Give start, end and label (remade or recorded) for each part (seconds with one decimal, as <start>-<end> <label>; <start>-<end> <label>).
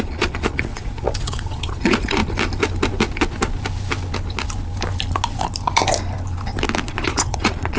0.0-2.2 remade; 2.2-6.9 recorded; 6.9-7.8 remade